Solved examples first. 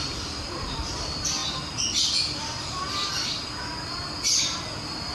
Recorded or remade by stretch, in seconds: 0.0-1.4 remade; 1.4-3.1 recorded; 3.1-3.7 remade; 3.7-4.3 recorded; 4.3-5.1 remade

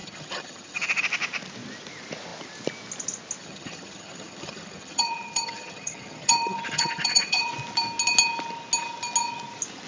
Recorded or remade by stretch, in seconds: 0.0-1.0 remade; 1.0-3.4 recorded; 3.4-7.5 remade; 7.5-9.9 recorded